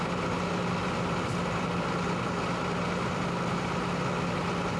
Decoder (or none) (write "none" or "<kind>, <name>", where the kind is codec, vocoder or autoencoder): none